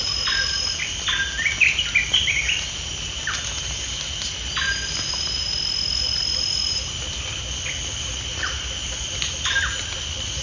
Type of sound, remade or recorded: recorded